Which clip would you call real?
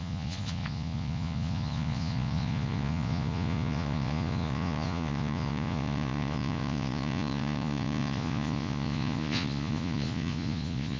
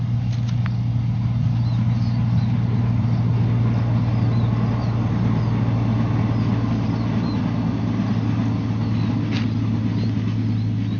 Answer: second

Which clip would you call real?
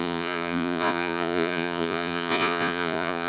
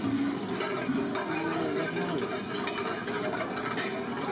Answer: second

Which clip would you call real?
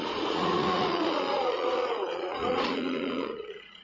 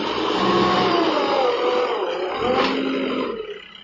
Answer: second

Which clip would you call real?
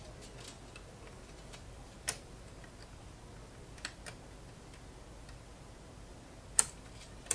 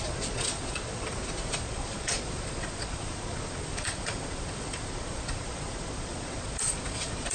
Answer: first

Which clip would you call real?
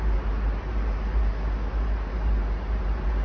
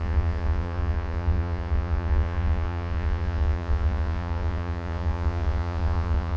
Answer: first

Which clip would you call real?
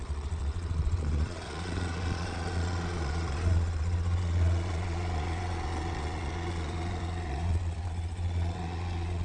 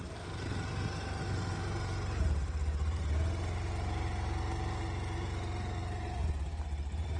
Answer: second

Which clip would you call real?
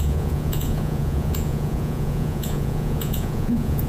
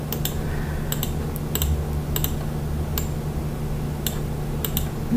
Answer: second